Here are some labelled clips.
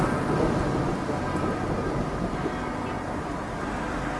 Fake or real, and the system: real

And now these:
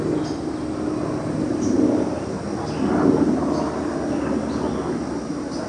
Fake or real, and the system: real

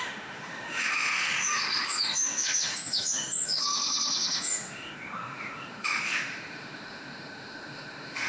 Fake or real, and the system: fake, autoencoder, DAC-VAE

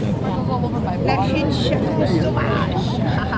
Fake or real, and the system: real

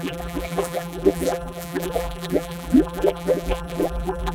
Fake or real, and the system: fake, vocoder, BigVGAN v2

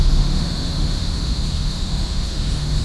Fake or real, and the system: fake, autoencoder, DAC-VAE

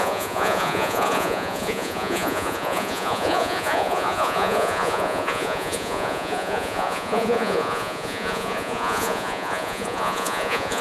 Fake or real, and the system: fake, vocoder, Vocos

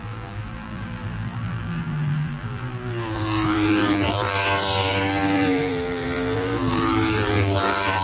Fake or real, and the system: fake, vocoder, BigVGAN v2